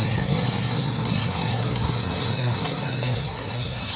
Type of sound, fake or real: fake